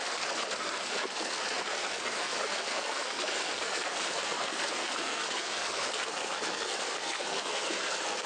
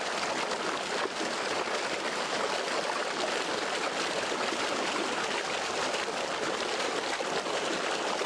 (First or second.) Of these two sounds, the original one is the second